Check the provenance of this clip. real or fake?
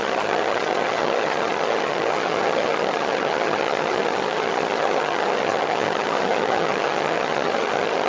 fake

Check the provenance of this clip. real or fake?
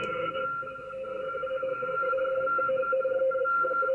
fake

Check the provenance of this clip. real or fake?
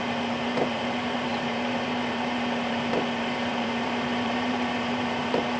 fake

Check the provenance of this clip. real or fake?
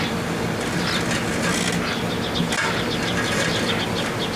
real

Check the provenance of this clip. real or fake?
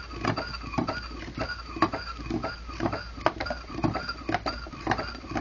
real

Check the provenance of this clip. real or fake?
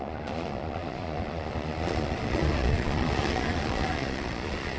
fake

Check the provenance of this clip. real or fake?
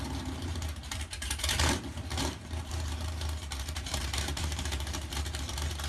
fake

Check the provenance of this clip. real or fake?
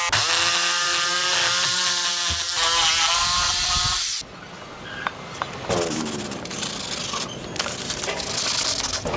real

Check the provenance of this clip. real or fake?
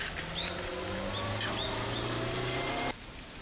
real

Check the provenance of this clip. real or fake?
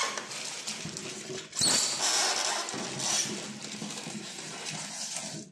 real